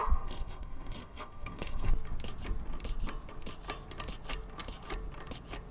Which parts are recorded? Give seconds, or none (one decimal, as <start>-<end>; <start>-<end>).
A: 1.9-5.7

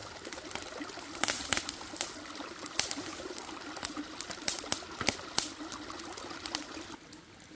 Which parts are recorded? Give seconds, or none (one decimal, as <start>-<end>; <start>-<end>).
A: 0.0-7.5

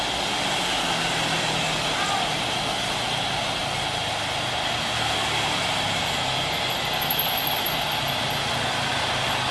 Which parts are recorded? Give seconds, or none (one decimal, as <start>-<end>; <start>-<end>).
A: 0.0-9.5

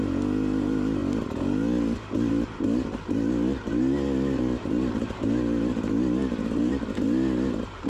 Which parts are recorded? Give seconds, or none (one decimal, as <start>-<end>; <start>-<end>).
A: 0.0-7.9

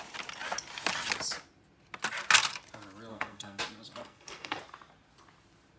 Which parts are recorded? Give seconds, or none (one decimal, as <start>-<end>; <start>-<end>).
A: 0.0-3.1; 3.6-4.0; 4.6-5.8